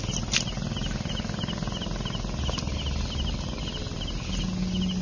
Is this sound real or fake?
real